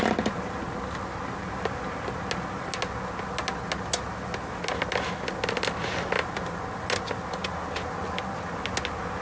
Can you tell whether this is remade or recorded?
recorded